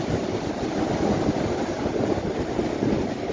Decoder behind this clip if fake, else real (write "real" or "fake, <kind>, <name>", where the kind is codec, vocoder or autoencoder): real